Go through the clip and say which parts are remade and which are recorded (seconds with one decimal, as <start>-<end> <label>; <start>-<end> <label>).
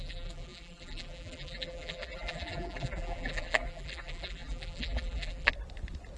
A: 0.0-5.5 remade; 5.5-6.2 recorded